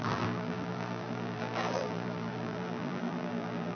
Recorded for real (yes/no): no